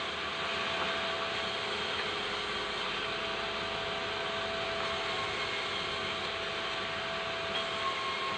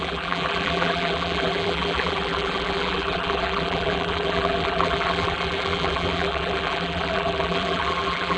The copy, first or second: second